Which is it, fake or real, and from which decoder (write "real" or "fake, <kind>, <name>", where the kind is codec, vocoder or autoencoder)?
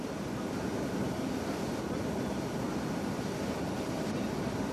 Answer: real